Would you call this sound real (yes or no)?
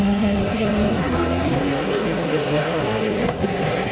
no